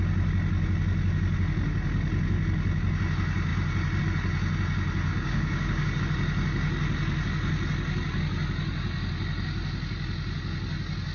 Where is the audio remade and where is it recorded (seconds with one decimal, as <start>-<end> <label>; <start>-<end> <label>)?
0.0-5.1 recorded; 5.1-6.0 remade; 6.0-11.1 recorded